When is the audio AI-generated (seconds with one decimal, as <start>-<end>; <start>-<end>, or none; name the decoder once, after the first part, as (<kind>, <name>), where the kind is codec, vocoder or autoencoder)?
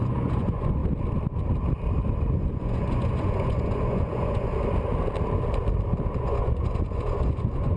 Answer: 0.0-0.8 (vocoder, Vocos); 2.5-4.5; 6.2-7.8